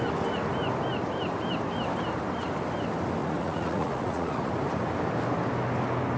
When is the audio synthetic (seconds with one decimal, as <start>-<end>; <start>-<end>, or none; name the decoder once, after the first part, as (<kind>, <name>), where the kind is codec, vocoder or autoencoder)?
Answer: 3.2-4.5 (vocoder, Vocos)